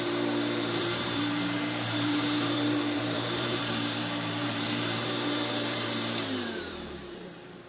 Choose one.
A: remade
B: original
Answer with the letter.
A